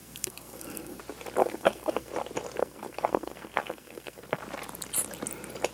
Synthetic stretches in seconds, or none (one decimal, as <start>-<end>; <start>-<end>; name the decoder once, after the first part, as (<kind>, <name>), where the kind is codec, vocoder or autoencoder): 0.0-1.0 (codec, SNAC); 1.4-2.1; 2.6-4.4